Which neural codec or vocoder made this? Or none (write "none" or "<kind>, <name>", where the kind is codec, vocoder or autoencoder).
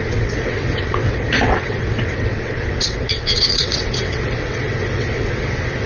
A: vocoder, WaveNeXt